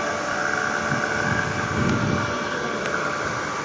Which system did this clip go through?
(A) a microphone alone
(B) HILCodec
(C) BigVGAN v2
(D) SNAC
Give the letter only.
A